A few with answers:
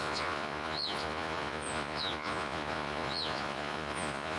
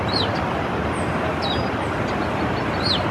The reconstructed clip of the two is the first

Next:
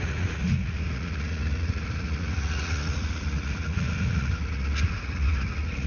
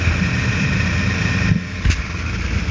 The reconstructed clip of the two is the first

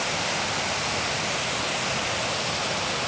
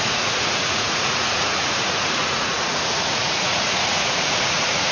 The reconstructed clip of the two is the second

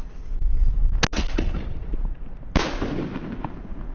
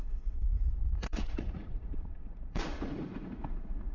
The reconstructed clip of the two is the second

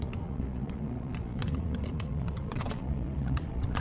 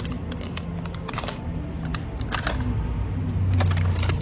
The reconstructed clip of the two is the first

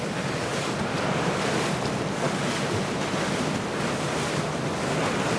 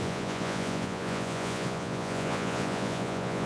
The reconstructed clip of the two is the second